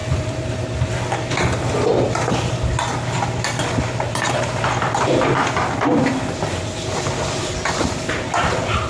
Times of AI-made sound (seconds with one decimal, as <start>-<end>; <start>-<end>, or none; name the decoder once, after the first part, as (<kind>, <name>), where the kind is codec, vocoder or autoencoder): 0.0-0.6 (vocoder, BigVGAN v2); 1.9-2.5; 3.6-6.5